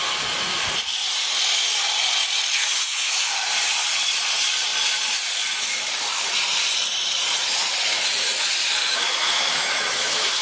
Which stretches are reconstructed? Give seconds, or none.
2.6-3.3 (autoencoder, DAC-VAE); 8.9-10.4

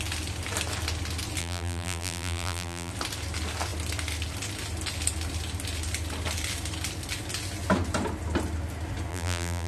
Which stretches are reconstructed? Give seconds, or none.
1.4-2.9 (vocoder, BigVGAN v2); 9.1-9.7